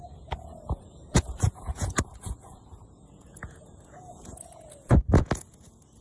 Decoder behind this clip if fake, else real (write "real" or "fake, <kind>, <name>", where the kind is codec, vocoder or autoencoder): fake, vocoder, Vocos